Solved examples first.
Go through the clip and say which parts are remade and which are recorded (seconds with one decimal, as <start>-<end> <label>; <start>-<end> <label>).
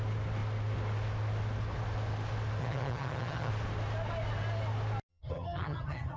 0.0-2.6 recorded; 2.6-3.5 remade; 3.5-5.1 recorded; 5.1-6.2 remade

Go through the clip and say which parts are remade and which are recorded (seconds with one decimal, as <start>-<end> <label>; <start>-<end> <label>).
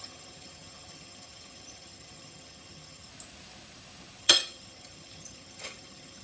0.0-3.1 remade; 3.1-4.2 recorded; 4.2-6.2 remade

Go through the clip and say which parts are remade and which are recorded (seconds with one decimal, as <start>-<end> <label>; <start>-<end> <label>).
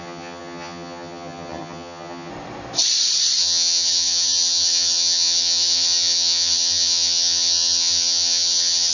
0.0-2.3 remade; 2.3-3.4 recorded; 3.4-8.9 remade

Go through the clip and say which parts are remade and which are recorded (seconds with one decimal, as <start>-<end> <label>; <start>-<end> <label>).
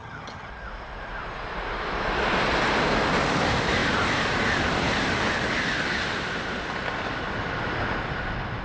0.0-0.5 remade; 0.5-8.6 recorded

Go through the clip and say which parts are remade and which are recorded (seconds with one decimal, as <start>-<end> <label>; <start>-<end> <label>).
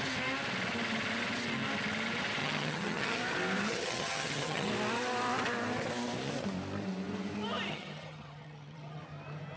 0.0-2.4 recorded; 2.4-3.2 remade; 3.2-3.6 recorded; 3.6-4.7 remade; 4.7-7.7 recorded; 7.7-9.0 remade; 9.0-9.6 recorded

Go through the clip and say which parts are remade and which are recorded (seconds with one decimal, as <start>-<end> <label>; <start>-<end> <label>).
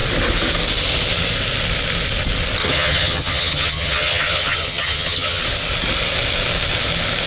0.0-2.6 recorded; 2.6-5.4 remade; 5.4-7.3 recorded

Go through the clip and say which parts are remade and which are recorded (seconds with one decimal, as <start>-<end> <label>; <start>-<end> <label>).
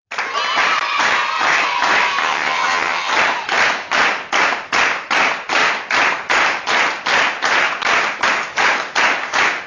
0.0-2.2 recorded; 2.2-3.1 remade; 3.1-9.7 recorded